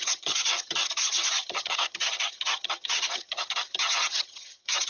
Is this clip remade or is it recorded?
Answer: remade